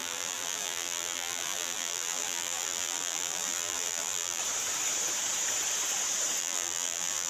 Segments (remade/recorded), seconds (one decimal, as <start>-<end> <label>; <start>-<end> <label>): 0.0-4.4 remade; 4.4-6.4 recorded; 6.4-7.3 remade